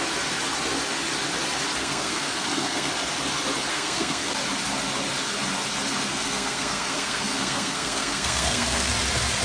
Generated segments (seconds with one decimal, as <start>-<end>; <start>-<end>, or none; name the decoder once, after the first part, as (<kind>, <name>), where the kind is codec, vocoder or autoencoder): 1.8-2.9 (codec, SNAC); 3.7-4.3; 6.1-8.9